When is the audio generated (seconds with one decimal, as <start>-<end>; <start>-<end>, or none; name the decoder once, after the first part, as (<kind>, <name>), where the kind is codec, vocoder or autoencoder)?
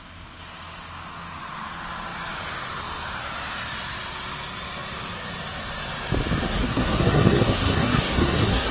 6.5-8.7 (codec, SNAC)